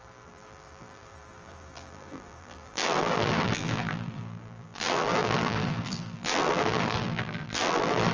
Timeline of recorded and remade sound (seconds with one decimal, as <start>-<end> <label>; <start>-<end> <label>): 0.0-8.1 remade